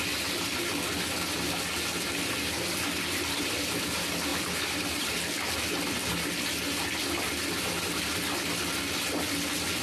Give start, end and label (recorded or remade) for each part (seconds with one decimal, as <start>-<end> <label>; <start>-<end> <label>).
0.0-9.8 recorded